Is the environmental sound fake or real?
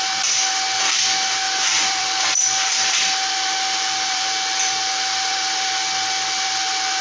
fake